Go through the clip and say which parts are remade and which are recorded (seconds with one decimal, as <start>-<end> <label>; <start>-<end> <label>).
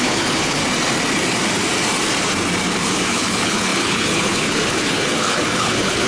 0.0-0.6 remade; 0.6-2.7 recorded; 2.7-6.1 remade